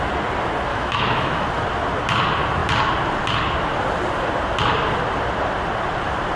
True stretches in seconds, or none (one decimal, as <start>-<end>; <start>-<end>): 0.0-0.7; 1.5-6.4